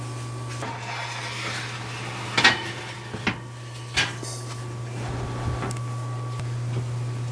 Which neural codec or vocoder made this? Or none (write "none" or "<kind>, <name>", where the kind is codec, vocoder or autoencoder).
none